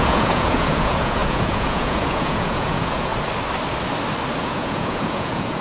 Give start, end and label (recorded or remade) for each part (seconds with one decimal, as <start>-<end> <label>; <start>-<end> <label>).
0.0-3.1 remade; 3.1-4.4 recorded; 4.4-5.6 remade